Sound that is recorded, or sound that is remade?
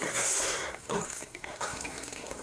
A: remade